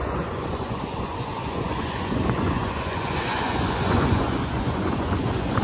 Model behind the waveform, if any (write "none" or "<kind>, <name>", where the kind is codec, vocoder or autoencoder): vocoder, Vocos